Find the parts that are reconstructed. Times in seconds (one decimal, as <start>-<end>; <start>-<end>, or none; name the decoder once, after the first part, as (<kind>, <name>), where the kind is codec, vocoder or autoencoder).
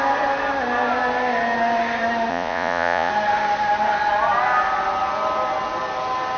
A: 2.3-3.1 (vocoder, Vocos)